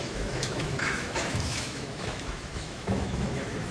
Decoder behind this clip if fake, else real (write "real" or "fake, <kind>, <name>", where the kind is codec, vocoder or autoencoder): fake, autoencoder, DAC-VAE